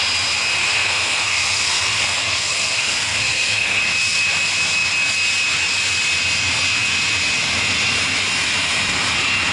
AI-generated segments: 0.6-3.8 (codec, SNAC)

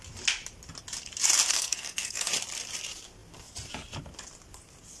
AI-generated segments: 1.5-2.3 (codec, SNAC)

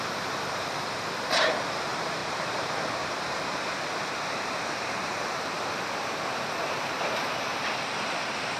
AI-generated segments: 0.0-7.5 (vocoder, BigVGAN v2); 8.1-8.6

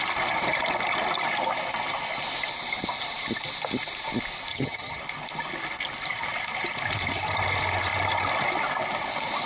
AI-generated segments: 4.5-5.0 (vocoder, HiFi-GAN)

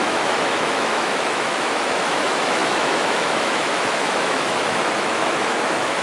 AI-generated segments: 0.0-6.0 (autoencoder, DAC-VAE)